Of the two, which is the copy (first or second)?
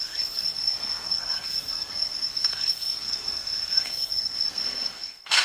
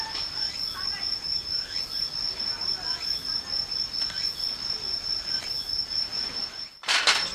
first